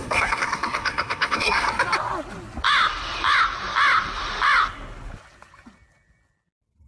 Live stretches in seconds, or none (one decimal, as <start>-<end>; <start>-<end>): 1.7-6.9